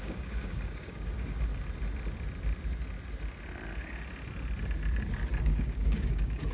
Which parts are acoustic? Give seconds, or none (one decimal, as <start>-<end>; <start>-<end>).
1.5-5.4